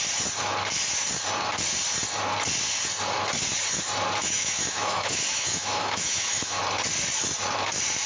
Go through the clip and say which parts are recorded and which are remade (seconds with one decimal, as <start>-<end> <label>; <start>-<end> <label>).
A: 0.0-4.2 recorded; 4.2-6.6 remade; 6.6-8.1 recorded